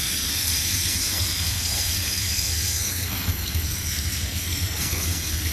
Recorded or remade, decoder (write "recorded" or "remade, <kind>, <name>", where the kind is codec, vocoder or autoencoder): remade, codec, SNAC